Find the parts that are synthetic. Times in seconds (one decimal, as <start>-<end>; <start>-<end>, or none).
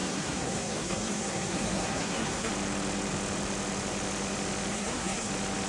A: 0.0-2.5; 4.7-5.3